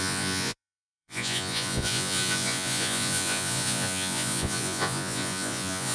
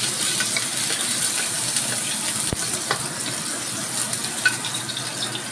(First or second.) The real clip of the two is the second